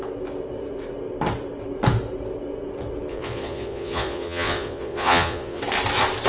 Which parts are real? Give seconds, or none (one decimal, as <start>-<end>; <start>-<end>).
0.0-3.1; 5.6-6.3